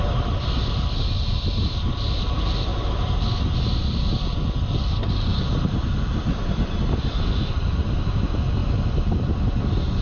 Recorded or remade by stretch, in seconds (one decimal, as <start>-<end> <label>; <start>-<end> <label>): 0.0-2.7 recorded; 2.7-3.4 remade; 3.4-5.3 recorded; 5.3-5.9 remade; 5.9-10.0 recorded